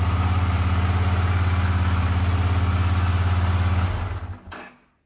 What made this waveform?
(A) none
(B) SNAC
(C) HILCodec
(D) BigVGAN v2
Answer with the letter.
A